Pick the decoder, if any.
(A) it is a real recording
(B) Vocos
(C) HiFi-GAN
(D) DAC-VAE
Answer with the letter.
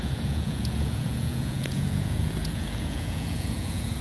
B